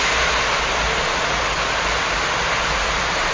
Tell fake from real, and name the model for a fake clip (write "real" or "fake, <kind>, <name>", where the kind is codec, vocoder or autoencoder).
real